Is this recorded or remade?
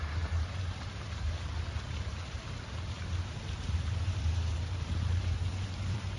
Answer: remade